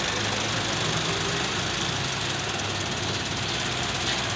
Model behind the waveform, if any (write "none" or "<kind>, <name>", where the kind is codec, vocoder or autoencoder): none